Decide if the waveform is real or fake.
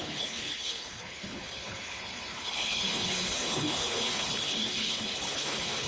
fake